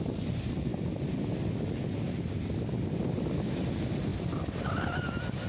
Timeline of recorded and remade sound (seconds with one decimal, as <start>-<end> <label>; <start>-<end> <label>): 0.0-5.5 recorded